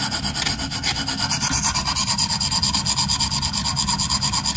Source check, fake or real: real